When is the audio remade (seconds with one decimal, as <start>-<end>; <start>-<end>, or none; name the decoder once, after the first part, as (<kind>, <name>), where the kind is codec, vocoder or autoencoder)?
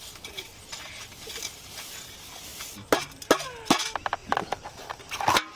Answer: 1.1-1.7 (vocoder, BigVGAN v2); 2.5-3.2; 4.2-5.0